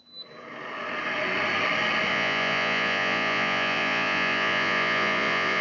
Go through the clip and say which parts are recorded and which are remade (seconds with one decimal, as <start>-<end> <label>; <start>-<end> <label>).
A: 0.0-2.1 recorded; 2.1-5.6 remade